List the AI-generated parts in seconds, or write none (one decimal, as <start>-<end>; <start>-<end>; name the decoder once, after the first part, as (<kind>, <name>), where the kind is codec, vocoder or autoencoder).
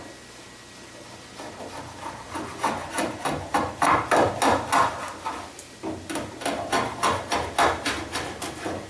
none